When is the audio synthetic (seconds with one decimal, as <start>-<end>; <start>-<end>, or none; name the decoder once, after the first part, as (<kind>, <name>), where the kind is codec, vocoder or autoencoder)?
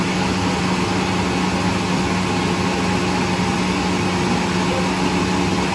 none